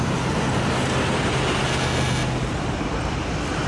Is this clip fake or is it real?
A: real